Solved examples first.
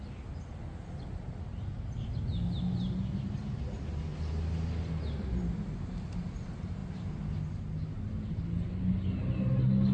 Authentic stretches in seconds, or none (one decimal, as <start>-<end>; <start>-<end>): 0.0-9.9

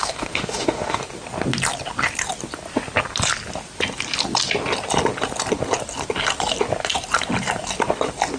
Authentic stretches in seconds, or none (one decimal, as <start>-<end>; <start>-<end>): 1.0-8.4

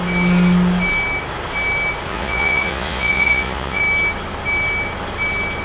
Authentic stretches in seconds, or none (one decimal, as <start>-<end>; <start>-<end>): 0.0-2.1; 3.8-5.6

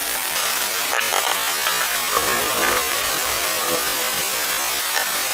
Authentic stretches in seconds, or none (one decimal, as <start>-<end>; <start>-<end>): 1.0-2.9; 3.5-5.3

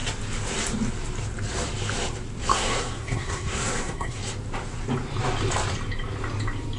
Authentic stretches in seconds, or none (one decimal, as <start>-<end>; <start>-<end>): 0.0-2.5; 4.2-6.8